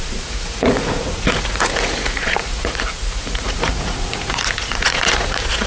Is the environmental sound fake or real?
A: fake